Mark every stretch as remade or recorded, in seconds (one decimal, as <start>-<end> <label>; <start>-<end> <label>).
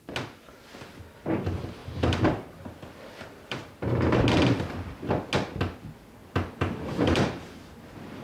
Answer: 0.0-1.8 recorded; 1.8-3.7 remade; 3.7-6.2 recorded; 6.2-8.2 remade